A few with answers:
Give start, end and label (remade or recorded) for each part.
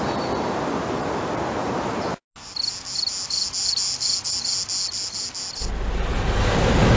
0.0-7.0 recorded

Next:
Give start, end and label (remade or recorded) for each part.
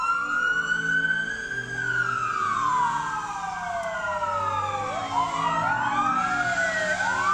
0.0-2.4 recorded; 2.4-3.1 remade; 3.1-7.3 recorded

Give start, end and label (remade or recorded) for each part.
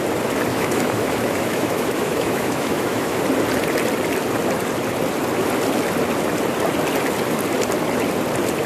0.0-0.5 recorded; 0.5-3.2 remade; 3.2-8.7 recorded